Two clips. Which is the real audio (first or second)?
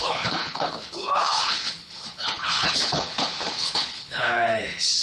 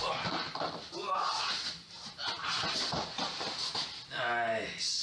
second